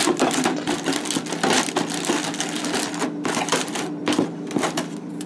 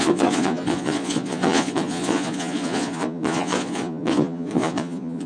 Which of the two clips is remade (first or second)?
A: second